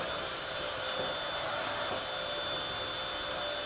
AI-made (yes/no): no